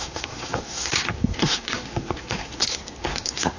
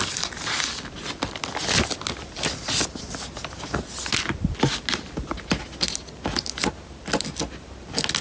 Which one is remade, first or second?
first